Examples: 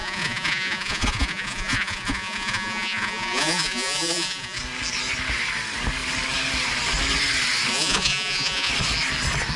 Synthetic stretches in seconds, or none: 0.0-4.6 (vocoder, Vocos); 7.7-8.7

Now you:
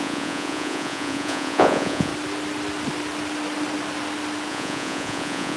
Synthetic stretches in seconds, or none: 0.0-2.1 (vocoder, Vocos); 4.5-5.6

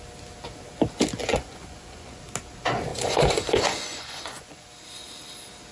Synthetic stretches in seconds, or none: 1.2-2.2 (vocoder, Vocos); 2.9-4.7